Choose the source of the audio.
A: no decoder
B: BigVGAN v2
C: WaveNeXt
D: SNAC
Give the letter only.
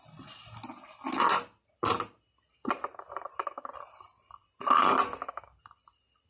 A